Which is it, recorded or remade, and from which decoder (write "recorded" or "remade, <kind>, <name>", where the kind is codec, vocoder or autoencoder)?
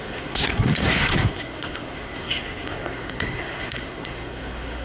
remade, codec, SNAC